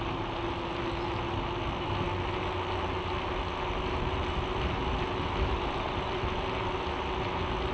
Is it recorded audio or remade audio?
recorded